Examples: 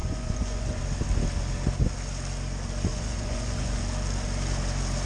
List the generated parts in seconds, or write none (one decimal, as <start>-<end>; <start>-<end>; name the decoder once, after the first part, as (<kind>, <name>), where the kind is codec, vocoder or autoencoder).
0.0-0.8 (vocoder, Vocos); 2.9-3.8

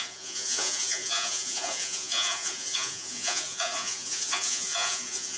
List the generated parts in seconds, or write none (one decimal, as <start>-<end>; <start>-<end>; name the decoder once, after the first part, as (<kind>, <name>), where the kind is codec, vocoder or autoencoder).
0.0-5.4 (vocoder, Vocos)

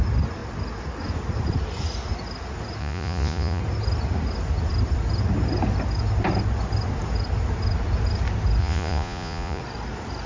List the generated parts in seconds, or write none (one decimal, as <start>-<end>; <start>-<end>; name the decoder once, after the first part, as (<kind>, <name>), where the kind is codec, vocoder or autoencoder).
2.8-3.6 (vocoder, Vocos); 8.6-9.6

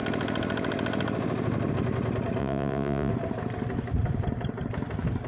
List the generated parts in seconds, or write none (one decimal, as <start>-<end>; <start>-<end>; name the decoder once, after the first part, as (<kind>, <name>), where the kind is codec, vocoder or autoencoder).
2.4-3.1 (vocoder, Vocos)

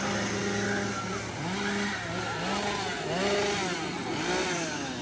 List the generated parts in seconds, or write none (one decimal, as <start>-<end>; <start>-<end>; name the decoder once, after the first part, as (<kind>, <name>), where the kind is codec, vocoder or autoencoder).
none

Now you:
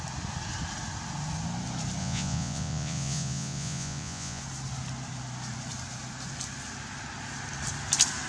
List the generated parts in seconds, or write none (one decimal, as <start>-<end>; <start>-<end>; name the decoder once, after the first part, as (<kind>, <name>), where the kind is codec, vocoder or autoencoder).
2.0-4.4 (vocoder, Vocos)

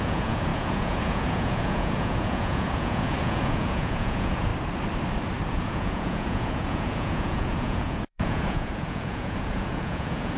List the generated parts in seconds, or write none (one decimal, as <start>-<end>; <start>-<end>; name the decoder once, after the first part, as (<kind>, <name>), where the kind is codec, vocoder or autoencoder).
0.0-4.5 (vocoder, Vocos); 5.5-10.4